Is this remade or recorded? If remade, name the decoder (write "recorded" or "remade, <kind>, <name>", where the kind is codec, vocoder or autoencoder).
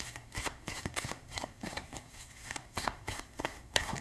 remade, codec, SNAC